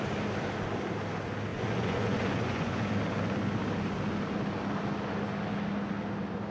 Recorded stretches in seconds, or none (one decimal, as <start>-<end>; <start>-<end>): 0.0-1.5; 2.9-6.5